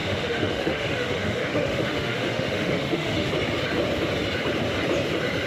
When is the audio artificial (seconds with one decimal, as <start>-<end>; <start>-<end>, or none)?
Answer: 0.0-3.3